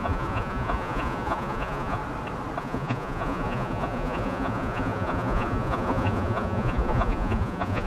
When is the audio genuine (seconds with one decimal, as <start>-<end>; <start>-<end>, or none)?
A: 2.0-2.6

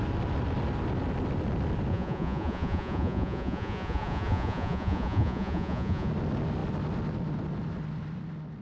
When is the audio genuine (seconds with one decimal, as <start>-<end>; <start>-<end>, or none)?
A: 0.0-1.9; 6.1-8.6

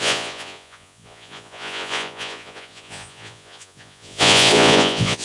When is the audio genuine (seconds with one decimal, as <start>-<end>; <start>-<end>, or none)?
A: none

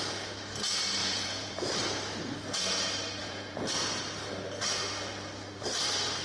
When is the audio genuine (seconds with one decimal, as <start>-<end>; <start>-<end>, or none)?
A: 0.0-1.0; 1.7-3.2; 3.7-6.2

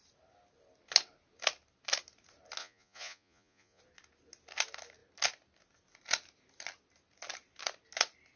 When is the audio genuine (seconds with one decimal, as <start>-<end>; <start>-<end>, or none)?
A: 0.0-2.6; 3.8-8.4

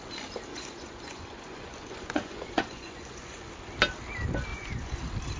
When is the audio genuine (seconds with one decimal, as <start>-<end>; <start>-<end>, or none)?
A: 0.0-0.5; 3.5-4.5; 5.0-5.4

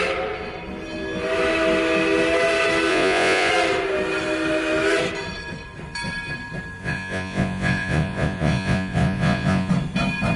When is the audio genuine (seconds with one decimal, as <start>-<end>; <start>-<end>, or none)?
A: 0.0-2.9; 3.5-6.8; 9.7-10.4